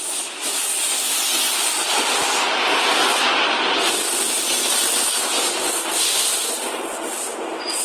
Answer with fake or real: real